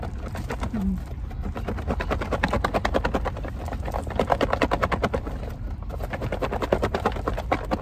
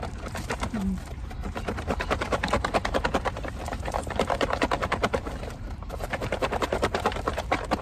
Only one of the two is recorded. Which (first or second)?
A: first